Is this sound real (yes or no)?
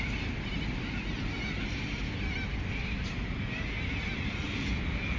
yes